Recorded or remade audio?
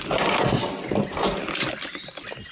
recorded